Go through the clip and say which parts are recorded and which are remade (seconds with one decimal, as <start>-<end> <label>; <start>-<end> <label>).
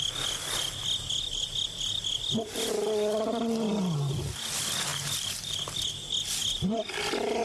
0.0-7.4 recorded